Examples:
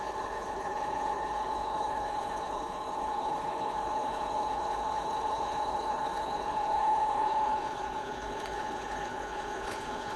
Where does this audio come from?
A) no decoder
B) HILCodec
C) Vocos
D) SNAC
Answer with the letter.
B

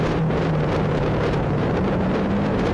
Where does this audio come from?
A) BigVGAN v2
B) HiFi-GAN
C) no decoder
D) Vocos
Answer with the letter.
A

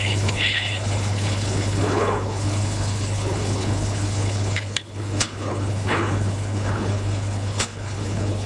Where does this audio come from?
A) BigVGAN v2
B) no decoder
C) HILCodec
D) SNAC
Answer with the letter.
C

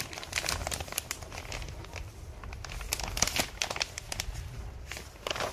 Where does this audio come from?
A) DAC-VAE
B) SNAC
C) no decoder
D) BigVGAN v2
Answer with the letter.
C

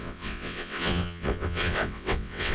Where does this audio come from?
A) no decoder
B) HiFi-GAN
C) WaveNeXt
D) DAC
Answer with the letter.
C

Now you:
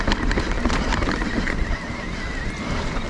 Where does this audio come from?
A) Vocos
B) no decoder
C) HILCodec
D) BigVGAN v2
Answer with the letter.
B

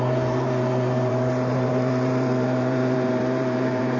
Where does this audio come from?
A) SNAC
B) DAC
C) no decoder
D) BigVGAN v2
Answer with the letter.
D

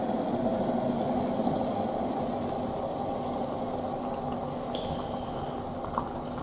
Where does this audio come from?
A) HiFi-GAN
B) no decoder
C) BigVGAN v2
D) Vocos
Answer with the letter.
B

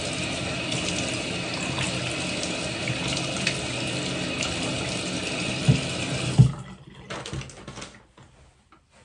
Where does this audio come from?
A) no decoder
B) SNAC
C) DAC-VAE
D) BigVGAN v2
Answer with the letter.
A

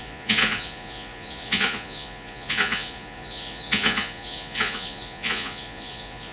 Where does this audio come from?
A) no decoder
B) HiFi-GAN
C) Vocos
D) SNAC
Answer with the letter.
C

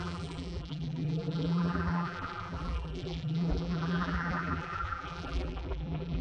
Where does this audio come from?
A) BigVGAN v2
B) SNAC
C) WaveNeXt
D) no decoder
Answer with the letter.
A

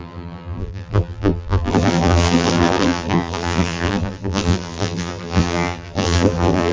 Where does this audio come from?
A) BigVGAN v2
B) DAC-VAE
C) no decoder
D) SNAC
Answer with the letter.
A